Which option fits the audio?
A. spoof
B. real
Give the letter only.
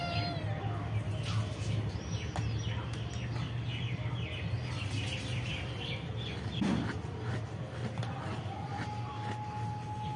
B